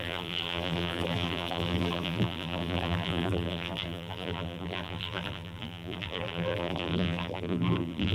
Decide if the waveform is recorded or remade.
remade